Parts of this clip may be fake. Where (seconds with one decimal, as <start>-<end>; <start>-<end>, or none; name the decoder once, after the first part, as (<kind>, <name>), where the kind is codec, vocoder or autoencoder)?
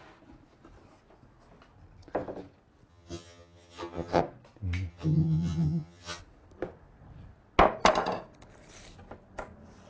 2.9-4.2 (vocoder, HiFi-GAN); 4.9-6.2